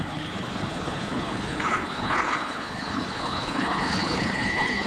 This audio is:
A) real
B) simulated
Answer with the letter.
B